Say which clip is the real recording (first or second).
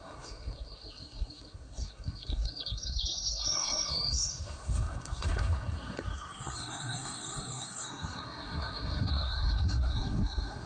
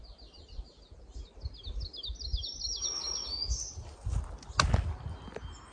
second